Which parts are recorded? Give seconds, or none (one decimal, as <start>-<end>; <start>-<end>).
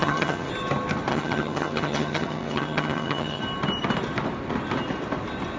0.5-1.1; 3.4-5.6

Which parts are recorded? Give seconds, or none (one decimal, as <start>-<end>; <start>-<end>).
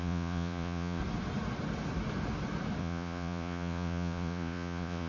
1.0-2.8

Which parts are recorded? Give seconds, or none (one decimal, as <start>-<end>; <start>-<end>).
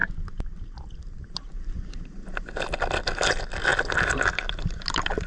0.0-5.3